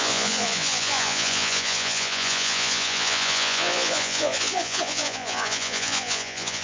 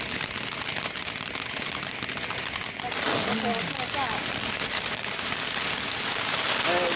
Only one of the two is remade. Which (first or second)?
first